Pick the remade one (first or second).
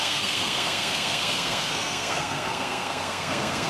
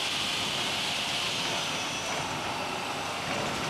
first